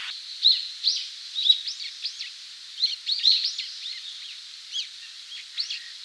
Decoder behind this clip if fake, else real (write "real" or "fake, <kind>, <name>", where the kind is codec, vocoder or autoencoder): real